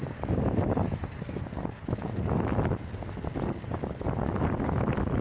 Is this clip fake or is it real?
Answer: real